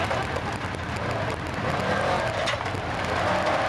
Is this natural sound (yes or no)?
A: yes